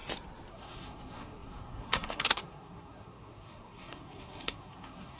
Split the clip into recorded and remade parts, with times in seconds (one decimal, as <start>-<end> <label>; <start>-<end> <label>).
0.0-0.5 recorded; 0.5-5.2 remade

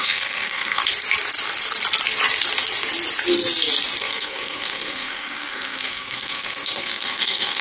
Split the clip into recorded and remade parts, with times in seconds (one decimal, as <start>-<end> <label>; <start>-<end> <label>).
0.0-0.8 remade; 0.8-4.0 recorded; 4.0-7.6 remade

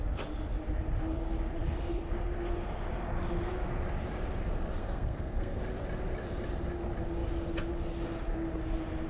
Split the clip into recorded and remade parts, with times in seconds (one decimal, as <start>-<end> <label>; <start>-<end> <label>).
0.0-4.8 recorded; 4.8-5.6 remade; 5.6-9.1 recorded